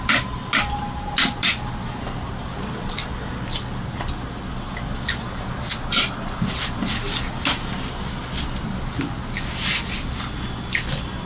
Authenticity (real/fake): real